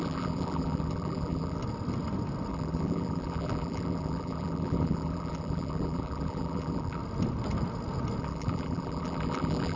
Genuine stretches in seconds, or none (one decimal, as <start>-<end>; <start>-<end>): 1.6-2.5; 7.0-8.2